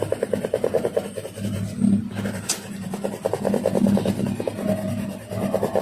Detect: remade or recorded recorded